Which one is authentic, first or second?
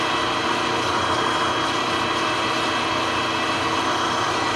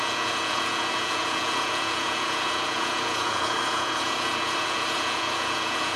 first